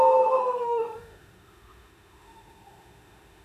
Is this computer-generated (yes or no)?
yes